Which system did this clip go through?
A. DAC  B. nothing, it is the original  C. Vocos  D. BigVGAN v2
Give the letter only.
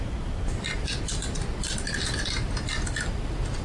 B